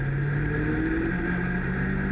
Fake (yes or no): no